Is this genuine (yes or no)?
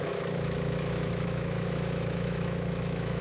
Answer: no